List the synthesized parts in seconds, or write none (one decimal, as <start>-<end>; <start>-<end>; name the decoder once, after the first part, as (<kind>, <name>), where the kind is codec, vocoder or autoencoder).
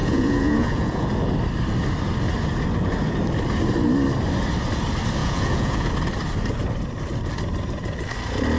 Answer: 0.0-1.1 (vocoder, Vocos); 5.2-5.9